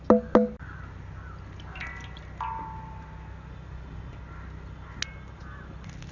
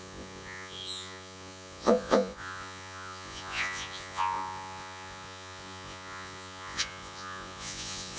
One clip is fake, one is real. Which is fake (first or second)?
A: second